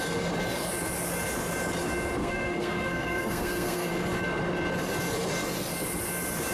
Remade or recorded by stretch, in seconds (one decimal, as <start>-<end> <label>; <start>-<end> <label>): 0.0-2.2 recorded; 2.2-3.9 remade; 3.9-6.5 recorded